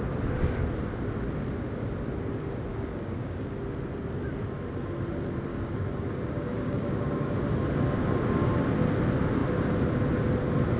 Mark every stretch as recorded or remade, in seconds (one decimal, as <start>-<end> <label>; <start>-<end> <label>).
0.0-2.7 recorded; 2.7-3.5 remade; 3.5-5.5 recorded; 5.5-7.4 remade; 7.4-10.8 recorded